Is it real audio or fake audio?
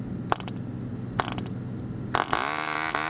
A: real